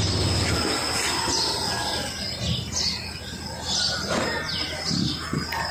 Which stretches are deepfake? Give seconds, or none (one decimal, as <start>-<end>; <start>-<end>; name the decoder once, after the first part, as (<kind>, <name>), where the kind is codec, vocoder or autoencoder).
none